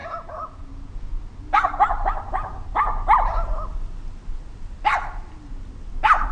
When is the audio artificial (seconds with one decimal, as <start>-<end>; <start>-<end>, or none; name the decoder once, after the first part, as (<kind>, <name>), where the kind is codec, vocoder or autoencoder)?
0.0-1.2 (vocoder, Vocos)